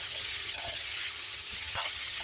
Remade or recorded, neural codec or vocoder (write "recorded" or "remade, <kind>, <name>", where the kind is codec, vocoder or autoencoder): remade, vocoder, HiFi-GAN